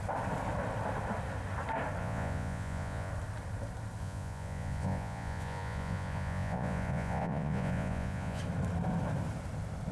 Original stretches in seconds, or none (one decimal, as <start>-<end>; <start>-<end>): 0.0-2.0; 3.1-4.0; 8.4-9.9